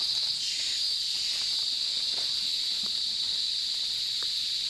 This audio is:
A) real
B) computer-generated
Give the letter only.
A